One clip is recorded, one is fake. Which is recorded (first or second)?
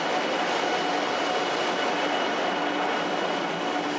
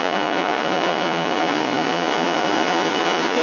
first